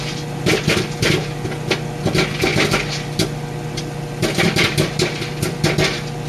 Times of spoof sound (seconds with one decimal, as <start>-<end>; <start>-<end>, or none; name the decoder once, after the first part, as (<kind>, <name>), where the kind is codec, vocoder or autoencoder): none